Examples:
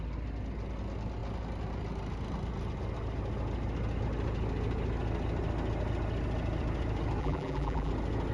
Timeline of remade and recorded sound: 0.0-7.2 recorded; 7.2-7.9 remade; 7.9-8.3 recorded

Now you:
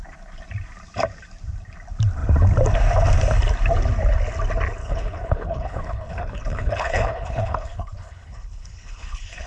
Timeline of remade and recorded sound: 0.0-4.8 recorded; 4.8-9.5 remade

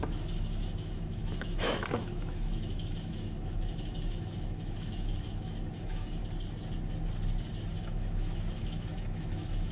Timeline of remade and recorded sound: 0.0-6.2 remade; 6.2-7.8 recorded; 7.8-9.7 remade

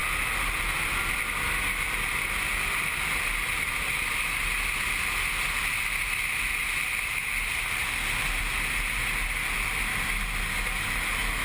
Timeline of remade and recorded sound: 0.0-11.4 recorded

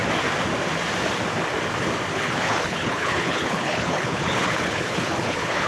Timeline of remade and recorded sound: 0.0-2.1 recorded; 2.1-5.7 remade